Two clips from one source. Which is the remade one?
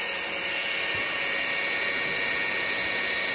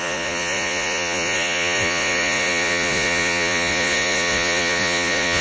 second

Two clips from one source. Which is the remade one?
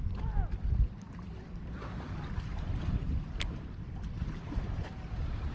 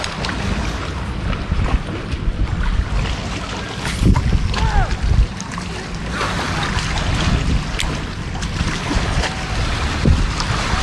first